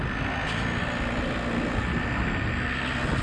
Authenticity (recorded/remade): recorded